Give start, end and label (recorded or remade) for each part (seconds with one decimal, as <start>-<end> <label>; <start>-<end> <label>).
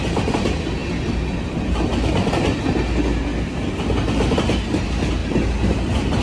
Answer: 0.0-6.2 recorded